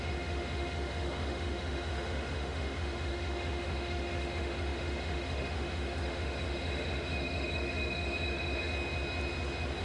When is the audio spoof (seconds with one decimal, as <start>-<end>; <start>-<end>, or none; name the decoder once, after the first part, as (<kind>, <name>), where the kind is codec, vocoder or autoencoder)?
0.0-8.7 (autoencoder, DAC-VAE)

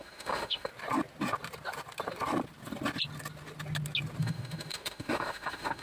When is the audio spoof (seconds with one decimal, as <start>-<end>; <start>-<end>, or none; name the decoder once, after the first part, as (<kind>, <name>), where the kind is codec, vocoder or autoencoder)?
0.0-0.7 (autoencoder, DAC-VAE); 4.2-5.8

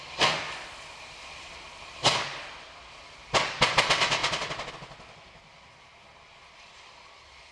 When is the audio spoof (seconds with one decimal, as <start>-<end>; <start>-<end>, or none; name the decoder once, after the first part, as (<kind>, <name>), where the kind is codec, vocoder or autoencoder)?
none

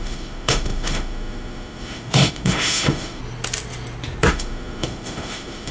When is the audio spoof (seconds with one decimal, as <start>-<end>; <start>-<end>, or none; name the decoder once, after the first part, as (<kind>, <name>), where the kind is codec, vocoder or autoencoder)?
0.0-3.2 (autoencoder, DAC-VAE); 4.3-5.7